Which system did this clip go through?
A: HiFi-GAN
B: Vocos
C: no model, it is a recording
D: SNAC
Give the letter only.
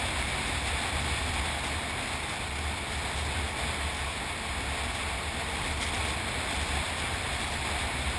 C